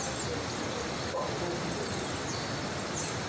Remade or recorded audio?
recorded